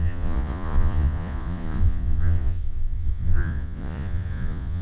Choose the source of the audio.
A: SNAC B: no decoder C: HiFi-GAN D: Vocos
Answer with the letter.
D